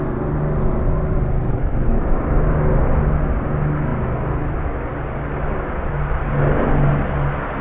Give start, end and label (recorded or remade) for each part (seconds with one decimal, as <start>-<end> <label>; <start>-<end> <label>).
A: 0.0-1.5 recorded; 1.5-2.0 remade; 2.0-7.6 recorded